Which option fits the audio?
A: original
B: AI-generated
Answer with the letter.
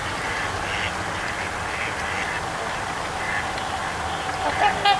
A